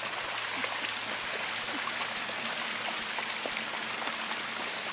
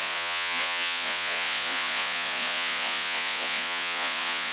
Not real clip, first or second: second